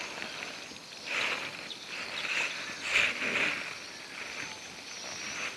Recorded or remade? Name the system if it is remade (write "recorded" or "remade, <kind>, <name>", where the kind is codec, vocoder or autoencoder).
recorded